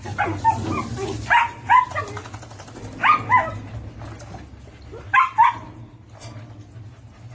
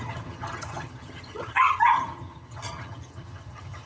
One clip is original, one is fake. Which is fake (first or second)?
second